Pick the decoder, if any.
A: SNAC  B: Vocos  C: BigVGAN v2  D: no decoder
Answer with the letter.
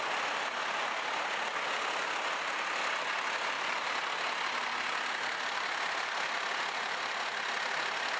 D